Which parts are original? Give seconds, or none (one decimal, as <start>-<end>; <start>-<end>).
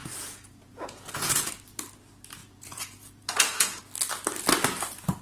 1.5-2.4; 3.8-5.2